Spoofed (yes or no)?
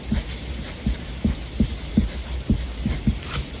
no